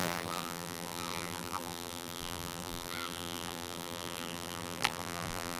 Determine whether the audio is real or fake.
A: fake